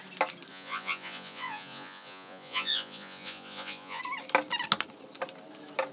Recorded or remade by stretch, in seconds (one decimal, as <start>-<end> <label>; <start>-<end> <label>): 0.0-0.5 recorded; 0.5-4.0 remade; 4.0-5.9 recorded